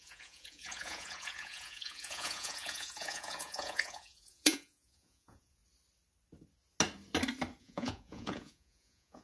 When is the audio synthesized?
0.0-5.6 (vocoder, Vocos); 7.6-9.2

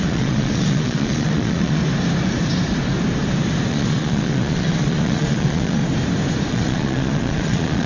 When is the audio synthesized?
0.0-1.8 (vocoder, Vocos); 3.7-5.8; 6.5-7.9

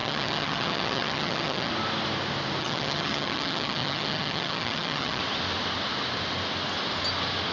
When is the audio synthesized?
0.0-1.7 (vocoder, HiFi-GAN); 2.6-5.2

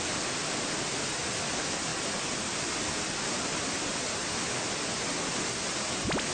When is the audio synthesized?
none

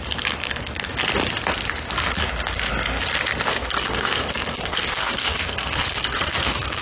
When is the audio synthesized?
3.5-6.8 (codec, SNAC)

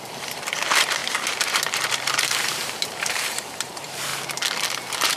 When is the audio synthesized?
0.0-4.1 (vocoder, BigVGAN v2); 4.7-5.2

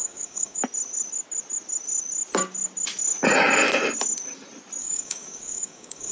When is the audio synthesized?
0.0-0.6 (codec, DAC); 4.8-6.1